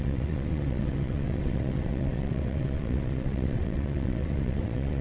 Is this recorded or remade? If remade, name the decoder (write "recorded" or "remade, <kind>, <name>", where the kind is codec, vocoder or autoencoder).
remade, vocoder, WaveNeXt